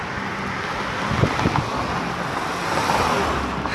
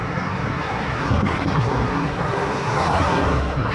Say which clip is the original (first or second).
first